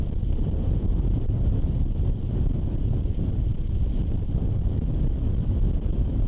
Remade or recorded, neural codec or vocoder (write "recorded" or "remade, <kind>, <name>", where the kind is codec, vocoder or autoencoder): remade, vocoder, BigVGAN v2